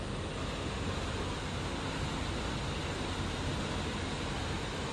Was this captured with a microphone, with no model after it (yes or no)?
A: yes